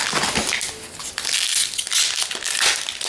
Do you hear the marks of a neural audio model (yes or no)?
no